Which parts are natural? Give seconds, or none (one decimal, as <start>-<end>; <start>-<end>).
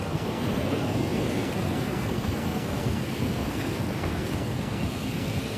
none